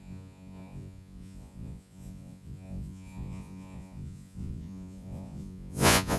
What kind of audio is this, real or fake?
fake